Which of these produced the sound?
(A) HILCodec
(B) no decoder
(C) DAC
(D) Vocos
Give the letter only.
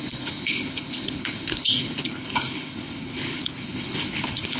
A